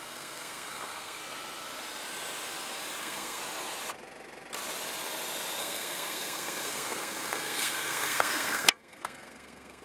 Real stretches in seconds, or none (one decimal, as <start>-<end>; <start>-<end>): 1.2-3.0; 3.4-5.6

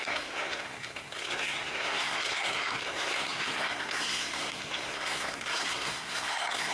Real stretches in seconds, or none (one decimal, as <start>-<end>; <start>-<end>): none

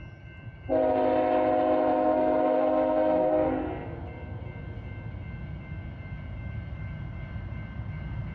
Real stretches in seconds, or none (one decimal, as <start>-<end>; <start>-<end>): 0.0-1.9; 3.5-8.3

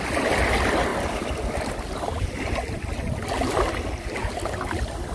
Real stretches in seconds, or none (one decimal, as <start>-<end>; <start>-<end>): 0.0-5.1

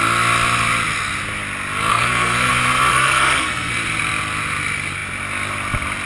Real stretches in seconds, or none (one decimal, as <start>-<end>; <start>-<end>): 0.0-1.9; 2.5-2.9; 3.7-6.1

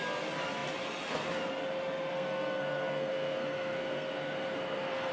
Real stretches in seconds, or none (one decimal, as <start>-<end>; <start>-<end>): 0.0-2.1